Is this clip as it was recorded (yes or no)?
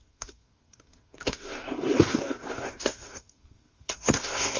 no